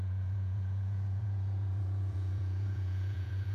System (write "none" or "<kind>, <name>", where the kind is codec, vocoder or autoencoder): vocoder, Vocos